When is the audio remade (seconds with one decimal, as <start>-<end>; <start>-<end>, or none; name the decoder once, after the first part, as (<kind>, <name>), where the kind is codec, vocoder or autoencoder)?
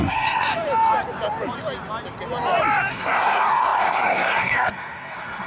0.0-0.5 (codec, SNAC); 2.9-5.5